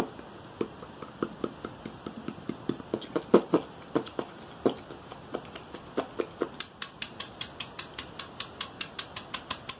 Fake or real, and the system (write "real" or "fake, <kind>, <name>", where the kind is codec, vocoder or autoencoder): real